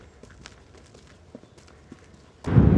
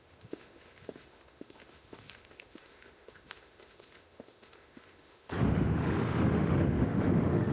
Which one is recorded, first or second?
first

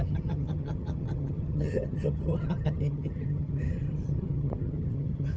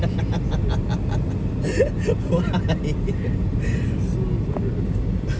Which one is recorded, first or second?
second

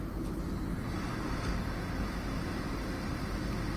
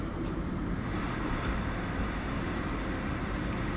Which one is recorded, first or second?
first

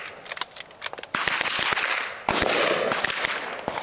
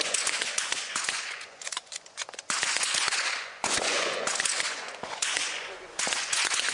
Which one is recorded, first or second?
first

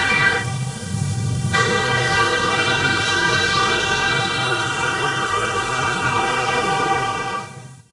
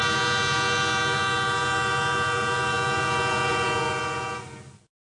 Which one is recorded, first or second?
second